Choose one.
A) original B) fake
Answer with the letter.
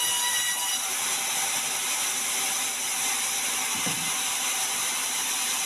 A